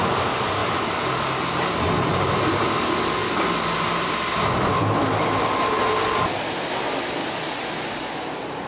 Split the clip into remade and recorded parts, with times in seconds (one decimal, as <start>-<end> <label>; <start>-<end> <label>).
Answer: 0.0-3.2 recorded; 3.2-5.0 remade; 5.0-7.2 recorded; 7.2-8.7 remade